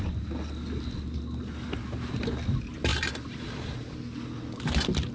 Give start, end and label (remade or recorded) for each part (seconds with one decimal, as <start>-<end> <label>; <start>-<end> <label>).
0.0-5.1 recorded